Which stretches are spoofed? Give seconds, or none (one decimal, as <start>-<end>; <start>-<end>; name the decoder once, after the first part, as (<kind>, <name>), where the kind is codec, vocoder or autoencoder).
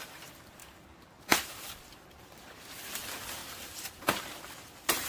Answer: 0.0-5.1 (vocoder, BigVGAN v2)